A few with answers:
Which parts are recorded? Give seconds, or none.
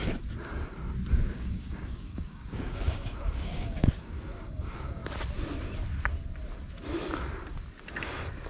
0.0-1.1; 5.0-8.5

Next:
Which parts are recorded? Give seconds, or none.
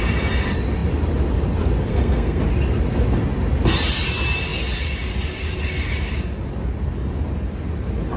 0.0-1.9; 2.4-8.2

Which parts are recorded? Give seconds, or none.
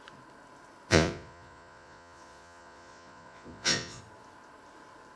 0.0-0.9; 4.0-5.2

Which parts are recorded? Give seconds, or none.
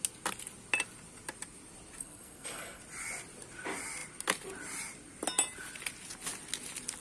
0.0-2.0; 2.8-7.0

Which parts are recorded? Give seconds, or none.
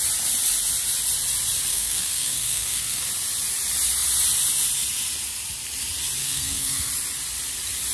0.0-1.7; 3.0-6.2; 6.9-7.9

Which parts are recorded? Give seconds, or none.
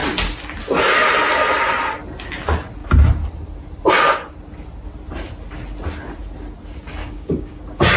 0.0-7.0; 7.6-8.0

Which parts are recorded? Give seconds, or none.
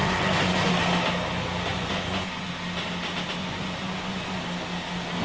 0.7-1.7; 2.5-3.4; 4.4-5.2